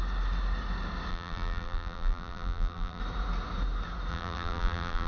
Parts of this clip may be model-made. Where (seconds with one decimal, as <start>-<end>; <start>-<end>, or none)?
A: 1.1-3.0; 4.1-5.1